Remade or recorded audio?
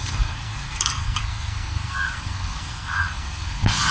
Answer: remade